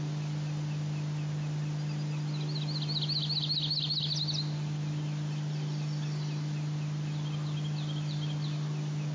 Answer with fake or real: real